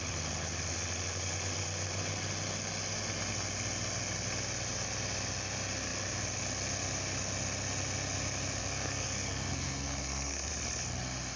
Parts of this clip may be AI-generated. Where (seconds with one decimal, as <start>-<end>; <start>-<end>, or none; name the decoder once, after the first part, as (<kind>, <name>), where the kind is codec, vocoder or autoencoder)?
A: 8.6-10.5 (codec, SNAC)